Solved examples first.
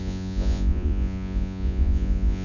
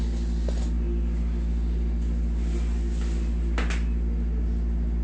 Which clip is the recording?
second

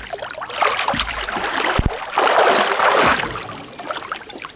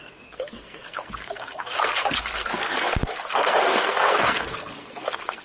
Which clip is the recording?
first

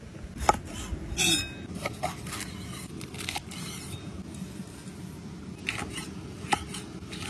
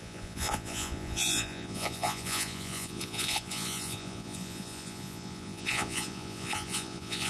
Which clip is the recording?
first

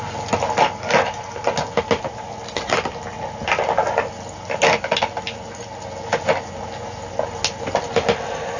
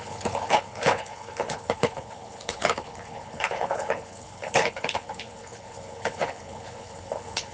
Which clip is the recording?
first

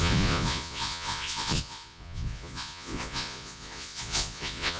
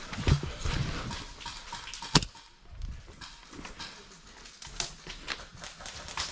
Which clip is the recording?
second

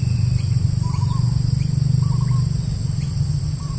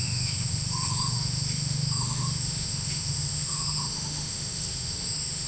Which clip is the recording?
first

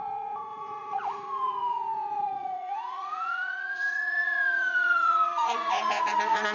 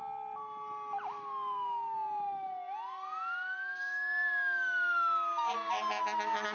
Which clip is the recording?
second